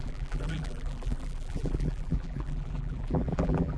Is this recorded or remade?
remade